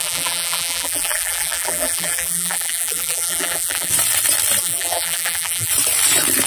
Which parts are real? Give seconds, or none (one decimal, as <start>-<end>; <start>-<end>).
3.9-4.6; 5.7-6.5